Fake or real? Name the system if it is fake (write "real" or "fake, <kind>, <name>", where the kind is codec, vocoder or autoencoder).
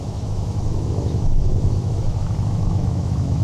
fake, autoencoder, DAC-VAE